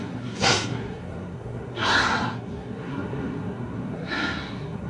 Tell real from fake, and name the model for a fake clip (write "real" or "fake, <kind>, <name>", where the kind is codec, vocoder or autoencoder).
fake, codec, SNAC